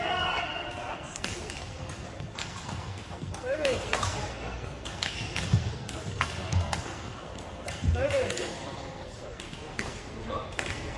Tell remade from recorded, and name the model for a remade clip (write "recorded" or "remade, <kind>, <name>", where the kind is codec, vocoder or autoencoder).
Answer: remade, codec, SNAC